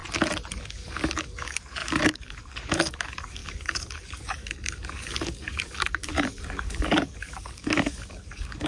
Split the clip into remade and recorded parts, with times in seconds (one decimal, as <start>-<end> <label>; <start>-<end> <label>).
0.0-0.6 recorded; 0.6-8.7 remade